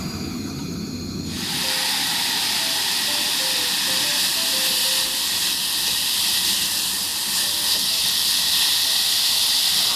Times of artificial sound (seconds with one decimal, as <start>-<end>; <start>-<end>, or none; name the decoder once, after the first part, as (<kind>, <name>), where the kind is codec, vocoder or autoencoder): none